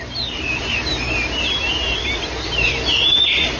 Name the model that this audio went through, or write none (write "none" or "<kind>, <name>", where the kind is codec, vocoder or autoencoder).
vocoder, BigVGAN v2